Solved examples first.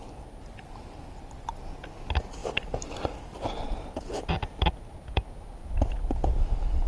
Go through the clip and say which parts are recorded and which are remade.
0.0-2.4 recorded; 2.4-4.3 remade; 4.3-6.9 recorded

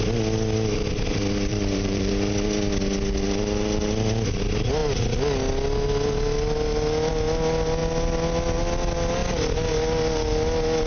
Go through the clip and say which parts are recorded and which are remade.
0.0-1.5 recorded; 1.5-2.1 remade; 2.1-10.9 recorded

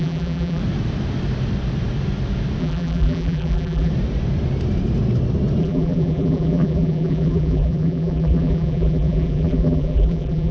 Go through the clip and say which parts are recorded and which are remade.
0.0-0.6 remade; 0.6-2.6 recorded; 2.6-3.9 remade; 3.9-5.6 recorded; 5.6-10.5 remade

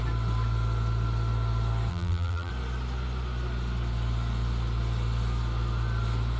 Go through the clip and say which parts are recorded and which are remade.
0.0-1.9 recorded; 1.9-2.5 remade; 2.5-6.4 recorded